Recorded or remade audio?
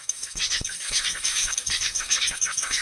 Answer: remade